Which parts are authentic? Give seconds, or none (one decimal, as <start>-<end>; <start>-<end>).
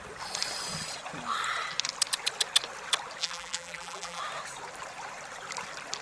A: 0.0-3.2; 4.2-6.0